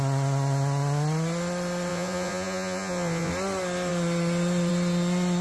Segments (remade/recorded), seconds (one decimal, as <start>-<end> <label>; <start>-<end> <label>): 0.0-1.9 recorded; 1.9-3.3 remade; 3.3-5.4 recorded